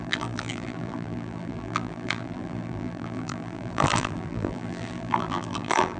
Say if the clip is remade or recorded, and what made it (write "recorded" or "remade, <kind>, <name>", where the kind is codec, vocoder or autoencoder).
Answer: remade, vocoder, BigVGAN v2